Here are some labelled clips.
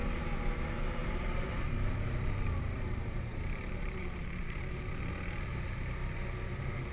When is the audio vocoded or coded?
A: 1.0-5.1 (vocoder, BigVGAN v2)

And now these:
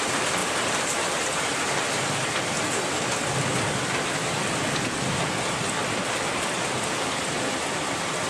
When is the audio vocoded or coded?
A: 0.4-1.6 (vocoder, BigVGAN v2)

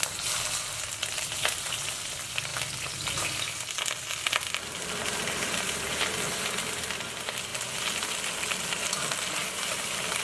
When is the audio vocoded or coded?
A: 2.5-3.3 (vocoder, BigVGAN v2); 9.4-10.2

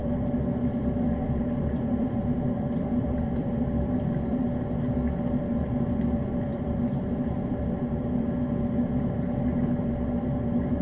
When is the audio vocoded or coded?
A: 0.0-4.4 (vocoder, BigVGAN v2); 6.5-7.6

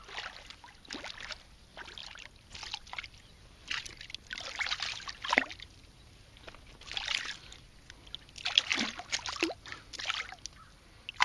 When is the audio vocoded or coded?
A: 2.0-2.5 (vocoder, BigVGAN v2)

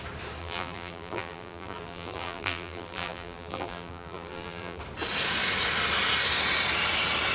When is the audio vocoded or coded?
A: 0.4-4.8 (vocoder, BigVGAN v2)